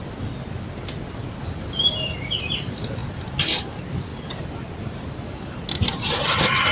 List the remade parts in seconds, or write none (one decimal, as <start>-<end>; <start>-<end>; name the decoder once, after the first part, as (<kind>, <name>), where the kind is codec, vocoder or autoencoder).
1.8-3.0 (vocoder, BigVGAN v2); 3.6-4.1; 4.8-6.7